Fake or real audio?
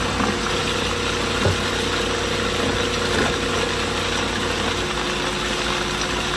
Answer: real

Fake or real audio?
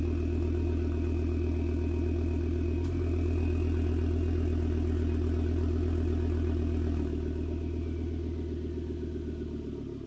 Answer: real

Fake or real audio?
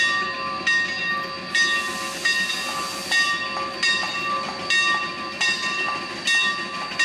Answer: real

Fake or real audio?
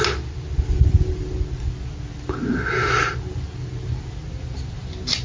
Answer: real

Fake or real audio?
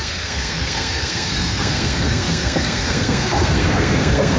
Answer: fake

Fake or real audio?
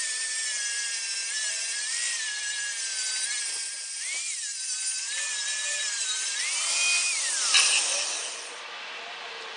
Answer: real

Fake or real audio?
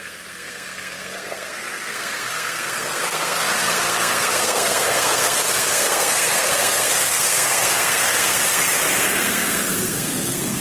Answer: fake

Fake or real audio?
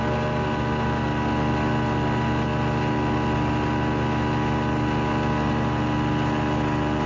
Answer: real